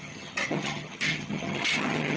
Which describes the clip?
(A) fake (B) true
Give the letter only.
A